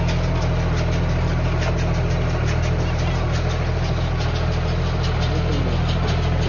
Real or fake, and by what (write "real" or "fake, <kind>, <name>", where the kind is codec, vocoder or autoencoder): real